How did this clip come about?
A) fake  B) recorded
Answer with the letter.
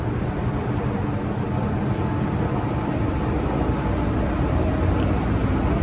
B